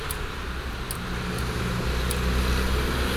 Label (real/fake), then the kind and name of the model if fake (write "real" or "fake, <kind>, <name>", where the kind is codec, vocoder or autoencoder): real